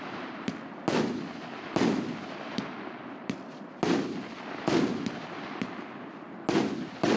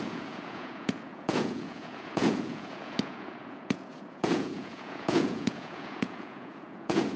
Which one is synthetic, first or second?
second